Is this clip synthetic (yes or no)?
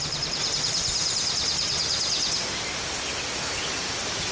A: no